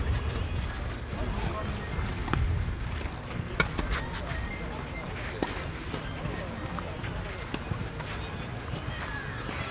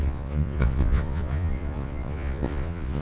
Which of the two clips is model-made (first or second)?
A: second